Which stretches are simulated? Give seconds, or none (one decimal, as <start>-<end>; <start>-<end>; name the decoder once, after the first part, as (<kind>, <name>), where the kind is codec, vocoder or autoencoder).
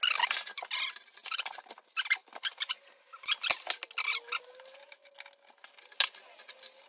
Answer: none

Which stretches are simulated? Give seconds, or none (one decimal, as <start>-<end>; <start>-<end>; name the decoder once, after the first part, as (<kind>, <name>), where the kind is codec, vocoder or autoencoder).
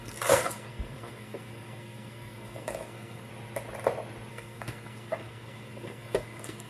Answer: 0.0-3.3 (codec, SNAC); 4.3-6.7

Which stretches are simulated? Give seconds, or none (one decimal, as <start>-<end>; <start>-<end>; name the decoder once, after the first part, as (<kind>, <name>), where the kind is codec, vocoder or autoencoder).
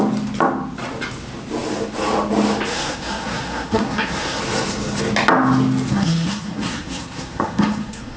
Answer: 2.7-4.4 (codec, SNAC); 5.9-8.2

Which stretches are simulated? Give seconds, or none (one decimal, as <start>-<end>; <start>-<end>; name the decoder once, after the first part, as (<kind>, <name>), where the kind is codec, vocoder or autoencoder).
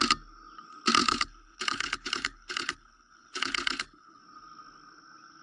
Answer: 1.0-4.2 (codec, HILCodec)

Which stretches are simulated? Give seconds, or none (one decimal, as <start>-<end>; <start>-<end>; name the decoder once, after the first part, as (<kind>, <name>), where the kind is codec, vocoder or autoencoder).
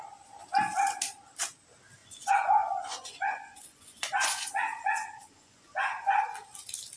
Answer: 2.0-6.2 (vocoder, Vocos)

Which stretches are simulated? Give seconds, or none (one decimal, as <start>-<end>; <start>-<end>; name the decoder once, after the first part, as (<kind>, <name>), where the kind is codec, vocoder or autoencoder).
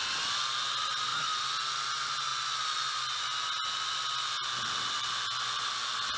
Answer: none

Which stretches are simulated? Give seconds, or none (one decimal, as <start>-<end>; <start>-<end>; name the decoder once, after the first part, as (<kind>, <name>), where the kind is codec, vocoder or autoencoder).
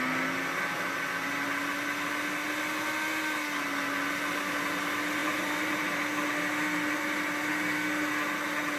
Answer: 5.2-5.8 (vocoder, BigVGAN v2)